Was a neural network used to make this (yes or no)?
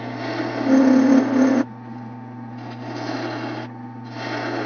no